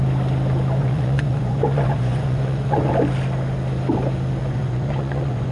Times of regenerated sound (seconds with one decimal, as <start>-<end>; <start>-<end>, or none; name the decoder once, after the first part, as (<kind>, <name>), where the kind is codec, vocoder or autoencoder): 0.8-2.9 (vocoder, Vocos); 4.4-5.5